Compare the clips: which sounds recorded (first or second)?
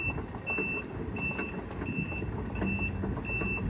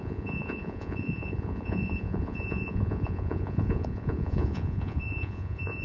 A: first